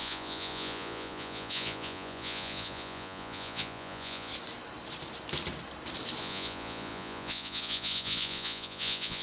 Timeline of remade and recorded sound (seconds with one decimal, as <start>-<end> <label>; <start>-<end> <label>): 0.0-4.3 remade; 4.3-6.2 recorded; 6.2-9.2 remade